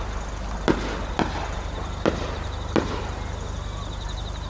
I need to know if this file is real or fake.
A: real